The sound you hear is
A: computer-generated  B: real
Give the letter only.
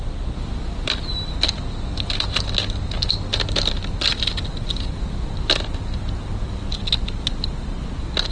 B